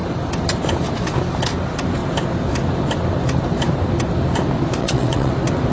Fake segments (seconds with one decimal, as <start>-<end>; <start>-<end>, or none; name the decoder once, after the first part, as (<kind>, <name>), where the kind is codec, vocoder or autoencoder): 4.8-5.3 (vocoder, WaveNeXt)